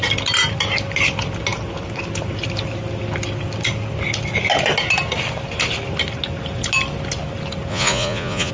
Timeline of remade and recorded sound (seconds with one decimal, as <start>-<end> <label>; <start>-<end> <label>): 0.0-7.7 recorded; 7.7-8.5 remade